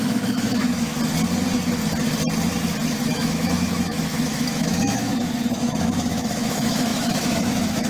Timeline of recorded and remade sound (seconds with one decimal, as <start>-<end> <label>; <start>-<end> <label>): 0.0-0.9 remade; 0.9-3.1 recorded; 3.1-7.9 remade

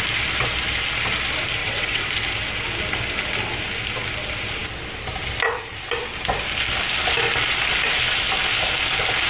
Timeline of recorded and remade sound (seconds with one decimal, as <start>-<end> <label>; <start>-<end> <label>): 0.0-1.6 recorded; 1.6-2.1 remade; 2.1-9.3 recorded

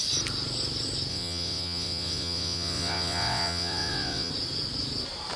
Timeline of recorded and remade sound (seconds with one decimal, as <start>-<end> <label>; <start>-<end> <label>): 0.0-1.1 recorded; 1.1-4.3 remade; 4.3-5.4 recorded

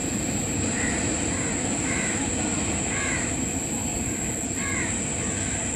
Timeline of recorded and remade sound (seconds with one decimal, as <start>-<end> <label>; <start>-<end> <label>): 0.0-1.3 remade; 1.3-5.8 recorded

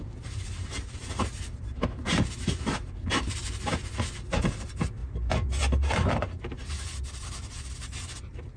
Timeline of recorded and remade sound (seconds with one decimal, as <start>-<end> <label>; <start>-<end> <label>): 0.0-5.0 remade; 5.0-6.1 recorded; 6.1-8.6 remade

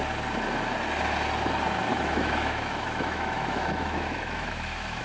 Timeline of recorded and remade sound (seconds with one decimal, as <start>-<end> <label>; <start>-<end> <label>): 0.0-1.9 recorded; 1.9-5.0 remade

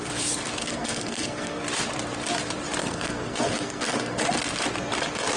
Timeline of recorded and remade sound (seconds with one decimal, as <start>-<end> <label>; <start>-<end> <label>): 0.0-0.6 recorded; 0.6-1.6 remade; 1.6-2.8 recorded; 2.8-4.2 remade; 4.2-5.4 recorded

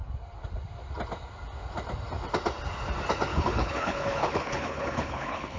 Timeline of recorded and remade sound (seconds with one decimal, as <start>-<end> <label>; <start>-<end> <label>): 0.0-3.3 recorded; 3.3-5.6 remade